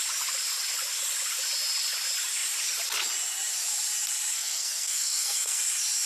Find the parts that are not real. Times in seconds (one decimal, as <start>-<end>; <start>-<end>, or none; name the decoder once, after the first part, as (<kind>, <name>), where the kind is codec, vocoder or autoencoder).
4.3-5.6 (codec, SNAC)